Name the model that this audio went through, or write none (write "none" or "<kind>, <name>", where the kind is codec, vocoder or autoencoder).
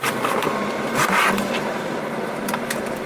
none